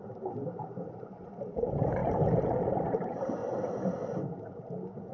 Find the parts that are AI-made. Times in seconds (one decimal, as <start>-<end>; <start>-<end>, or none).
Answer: 0.0-2.0; 2.7-3.4; 4.5-5.1